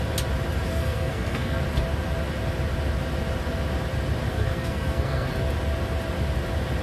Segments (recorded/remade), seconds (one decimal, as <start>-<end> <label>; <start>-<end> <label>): 0.0-0.7 recorded; 0.7-1.6 remade; 1.6-4.3 recorded; 4.3-5.3 remade; 5.3-6.8 recorded